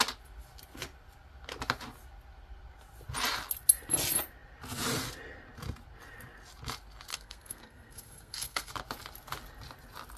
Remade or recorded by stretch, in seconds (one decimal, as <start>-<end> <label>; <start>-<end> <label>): 0.0-7.1 recorded; 7.1-8.7 remade; 8.7-10.2 recorded